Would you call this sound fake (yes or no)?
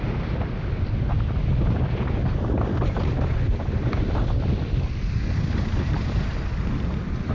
no